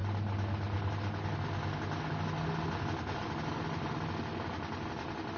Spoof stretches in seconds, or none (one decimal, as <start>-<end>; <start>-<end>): none